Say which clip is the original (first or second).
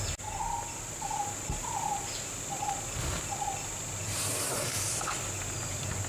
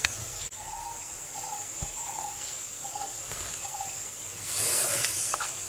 first